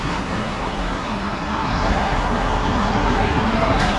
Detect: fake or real fake